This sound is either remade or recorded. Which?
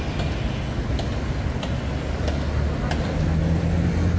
recorded